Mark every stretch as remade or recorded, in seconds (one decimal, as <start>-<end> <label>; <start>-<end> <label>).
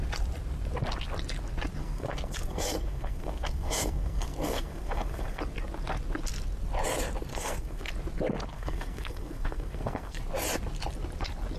0.0-1.8 recorded; 1.8-5.4 remade; 5.4-7.3 recorded; 7.3-7.9 remade; 7.9-8.5 recorded; 8.5-10.2 remade; 10.2-11.6 recorded